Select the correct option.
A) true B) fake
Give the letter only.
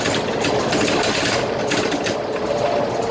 A